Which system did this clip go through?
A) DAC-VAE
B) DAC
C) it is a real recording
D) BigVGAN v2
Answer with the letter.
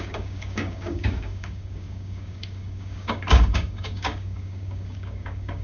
B